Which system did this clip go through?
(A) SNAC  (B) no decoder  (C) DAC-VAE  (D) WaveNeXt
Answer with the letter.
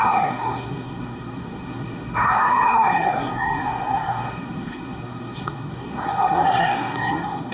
A